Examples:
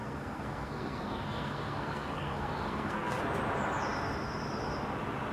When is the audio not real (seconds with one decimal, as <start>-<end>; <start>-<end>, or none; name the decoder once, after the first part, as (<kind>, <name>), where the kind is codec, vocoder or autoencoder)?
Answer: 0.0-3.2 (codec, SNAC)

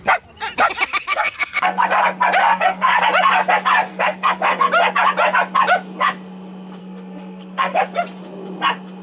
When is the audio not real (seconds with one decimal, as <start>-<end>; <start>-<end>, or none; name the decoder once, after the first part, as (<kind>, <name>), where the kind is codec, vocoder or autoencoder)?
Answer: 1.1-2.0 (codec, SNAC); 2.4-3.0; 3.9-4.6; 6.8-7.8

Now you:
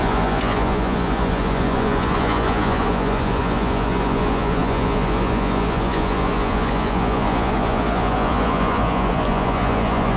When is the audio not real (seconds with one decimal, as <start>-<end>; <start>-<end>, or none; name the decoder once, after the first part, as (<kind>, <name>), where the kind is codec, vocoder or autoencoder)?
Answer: 0.0-10.2 (vocoder, Vocos)

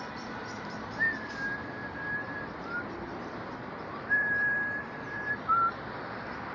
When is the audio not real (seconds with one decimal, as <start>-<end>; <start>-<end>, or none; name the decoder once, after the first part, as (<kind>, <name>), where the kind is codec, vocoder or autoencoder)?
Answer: 0.4-1.3 (vocoder, BigVGAN v2); 1.8-5.3

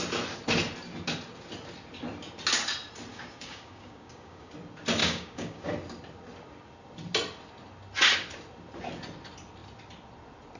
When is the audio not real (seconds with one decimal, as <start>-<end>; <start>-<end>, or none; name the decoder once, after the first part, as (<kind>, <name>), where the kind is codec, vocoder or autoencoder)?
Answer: 3.1-4.5 (codec, DAC); 5.0-5.7

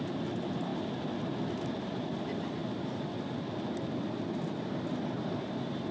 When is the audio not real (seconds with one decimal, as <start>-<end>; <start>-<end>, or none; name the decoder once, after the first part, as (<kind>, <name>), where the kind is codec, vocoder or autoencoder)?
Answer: 0.0-0.7 (vocoder, BigVGAN v2); 2.2-2.6; 5.1-5.9

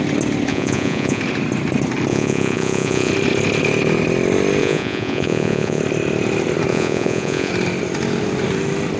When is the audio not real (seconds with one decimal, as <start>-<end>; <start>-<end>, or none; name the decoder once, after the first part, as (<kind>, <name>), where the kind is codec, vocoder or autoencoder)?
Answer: 0.5-1.2 (vocoder, Vocos); 2.1-3.1; 4.6-5.8; 6.7-7.5